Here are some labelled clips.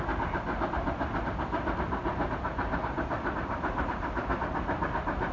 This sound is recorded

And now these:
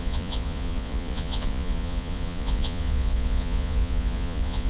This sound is remade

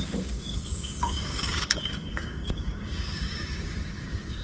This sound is remade